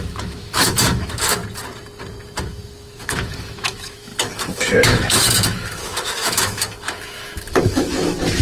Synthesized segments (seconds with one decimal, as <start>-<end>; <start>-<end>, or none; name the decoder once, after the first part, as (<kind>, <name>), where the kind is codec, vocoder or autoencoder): 0.0-1.4 (autoencoder, DAC-VAE); 2.4-8.4